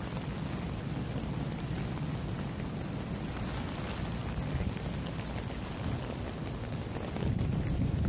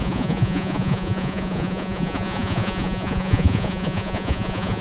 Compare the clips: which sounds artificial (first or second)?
second